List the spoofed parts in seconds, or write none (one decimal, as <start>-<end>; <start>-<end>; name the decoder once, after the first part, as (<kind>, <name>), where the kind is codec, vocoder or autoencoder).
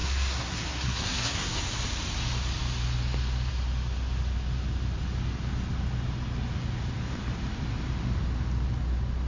0.0-1.6 (codec, SNAC)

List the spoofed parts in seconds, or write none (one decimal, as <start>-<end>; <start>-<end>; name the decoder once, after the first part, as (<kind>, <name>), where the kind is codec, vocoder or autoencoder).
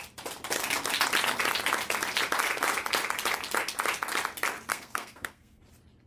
4.7-5.6 (codec, SNAC)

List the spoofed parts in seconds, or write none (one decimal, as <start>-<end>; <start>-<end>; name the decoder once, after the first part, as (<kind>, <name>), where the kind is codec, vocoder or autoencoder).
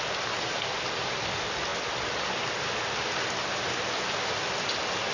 none